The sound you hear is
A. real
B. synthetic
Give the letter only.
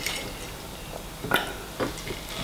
A